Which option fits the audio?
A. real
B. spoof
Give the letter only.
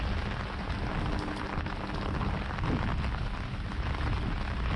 A